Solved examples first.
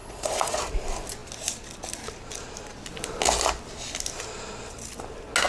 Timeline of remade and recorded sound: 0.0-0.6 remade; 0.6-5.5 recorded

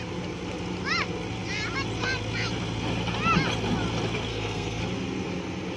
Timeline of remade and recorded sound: 0.0-4.3 recorded; 4.3-4.8 remade; 4.8-5.8 recorded

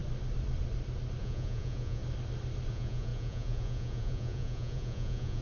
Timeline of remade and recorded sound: 0.0-1.2 recorded; 1.2-2.0 remade; 2.0-2.7 recorded; 2.7-5.4 remade

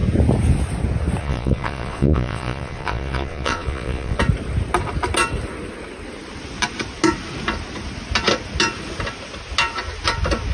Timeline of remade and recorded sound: 0.0-1.2 recorded; 1.2-4.2 remade; 4.2-10.5 recorded